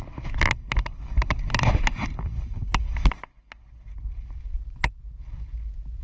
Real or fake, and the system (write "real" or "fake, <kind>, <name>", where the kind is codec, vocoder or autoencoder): real